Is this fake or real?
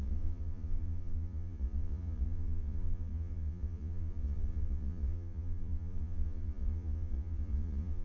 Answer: fake